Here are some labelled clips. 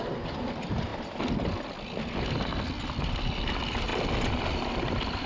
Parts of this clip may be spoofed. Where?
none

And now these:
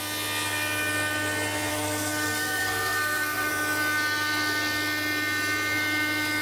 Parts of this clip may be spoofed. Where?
1.7-3.5

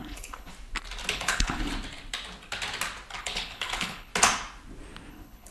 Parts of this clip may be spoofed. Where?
0.0-0.5; 1.1-1.7; 3.2-4.1; 5.1-5.5

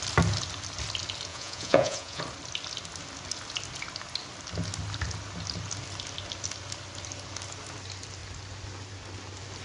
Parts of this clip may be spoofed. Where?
1.3-2.2

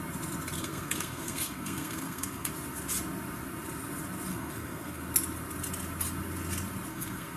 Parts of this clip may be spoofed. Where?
0.6-2.5; 4.3-5.1; 6.9-7.4

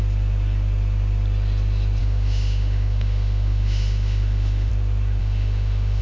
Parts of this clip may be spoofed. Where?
2.0-4.7; 5.2-6.0

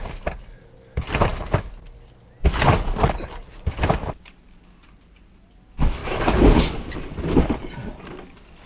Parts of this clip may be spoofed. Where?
none

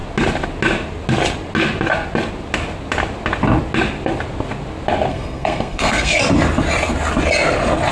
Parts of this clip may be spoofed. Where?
5.1-6.2